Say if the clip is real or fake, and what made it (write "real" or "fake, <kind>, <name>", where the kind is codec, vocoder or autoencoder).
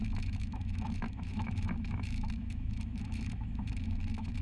fake, autoencoder, DAC-VAE